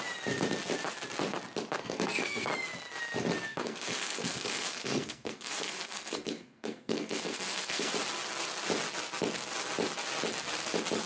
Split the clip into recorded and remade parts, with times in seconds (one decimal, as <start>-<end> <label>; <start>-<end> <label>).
0.0-1.8 recorded; 1.8-2.5 remade; 2.5-3.5 recorded; 3.5-7.9 remade; 7.9-11.1 recorded